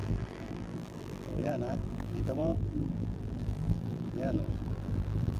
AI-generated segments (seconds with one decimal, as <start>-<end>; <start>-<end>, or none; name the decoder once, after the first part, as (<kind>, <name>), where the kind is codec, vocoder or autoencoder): 0.0-5.4 (vocoder, BigVGAN v2)